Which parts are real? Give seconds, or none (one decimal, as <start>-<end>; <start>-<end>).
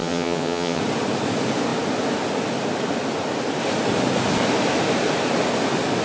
0.8-6.0